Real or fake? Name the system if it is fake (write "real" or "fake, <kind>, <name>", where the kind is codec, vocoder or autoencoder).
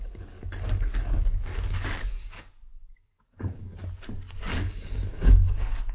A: fake, codec, DAC